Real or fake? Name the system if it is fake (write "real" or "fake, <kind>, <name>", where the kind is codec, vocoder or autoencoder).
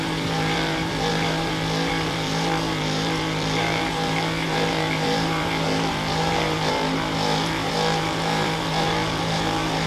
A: fake, vocoder, BigVGAN v2